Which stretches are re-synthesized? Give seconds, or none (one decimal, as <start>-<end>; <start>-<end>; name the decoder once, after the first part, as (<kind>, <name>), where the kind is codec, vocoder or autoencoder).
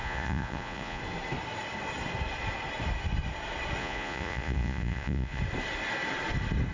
0.0-1.0 (vocoder, Vocos); 3.8-5.4